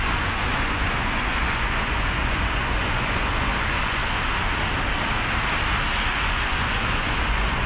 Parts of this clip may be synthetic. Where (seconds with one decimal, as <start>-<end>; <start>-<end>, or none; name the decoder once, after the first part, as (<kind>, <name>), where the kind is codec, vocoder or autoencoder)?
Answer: 0.0-4.0 (vocoder, Vocos); 6.0-7.7